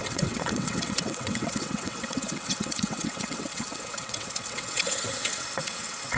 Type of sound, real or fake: fake